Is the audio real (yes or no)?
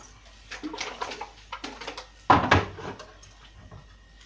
yes